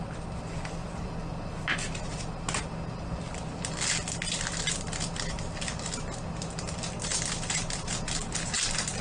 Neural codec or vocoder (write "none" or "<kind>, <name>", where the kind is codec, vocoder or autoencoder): none